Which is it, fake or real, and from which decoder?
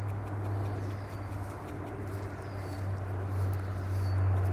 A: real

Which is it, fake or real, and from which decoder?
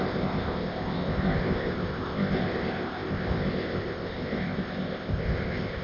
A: fake, codec, ZipCodec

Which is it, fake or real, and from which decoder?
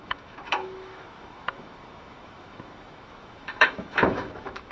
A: fake, autoencoder, DAC-VAE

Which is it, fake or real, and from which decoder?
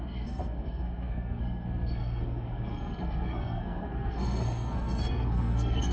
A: fake, codec, SNAC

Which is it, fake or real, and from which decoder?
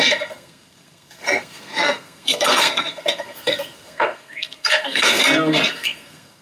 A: fake, codec, SNAC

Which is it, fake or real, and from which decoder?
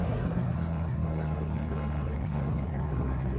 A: fake, codec, SNAC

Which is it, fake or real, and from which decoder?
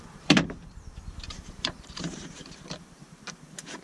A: fake, vocoder, BigVGAN v2